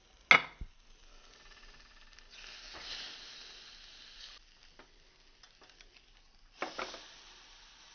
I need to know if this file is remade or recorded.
recorded